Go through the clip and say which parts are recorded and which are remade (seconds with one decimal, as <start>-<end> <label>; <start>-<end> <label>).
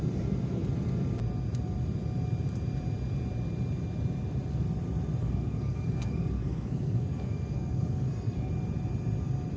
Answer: 0.0-5.2 recorded; 5.2-8.5 remade; 8.5-9.6 recorded